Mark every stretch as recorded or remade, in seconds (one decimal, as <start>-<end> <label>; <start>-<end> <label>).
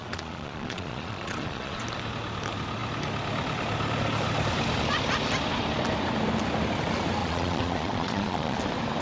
0.0-1.8 remade; 1.8-7.2 recorded; 7.2-8.6 remade; 8.6-9.0 recorded